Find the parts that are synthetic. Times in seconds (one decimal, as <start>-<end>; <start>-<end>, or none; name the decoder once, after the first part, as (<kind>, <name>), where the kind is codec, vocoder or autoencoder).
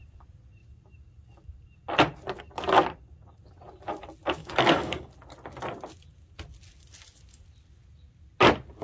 4.4-5.1 (codec, DAC)